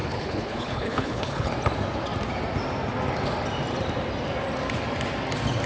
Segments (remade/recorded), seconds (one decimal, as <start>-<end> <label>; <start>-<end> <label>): 0.0-1.5 remade; 1.5-5.7 recorded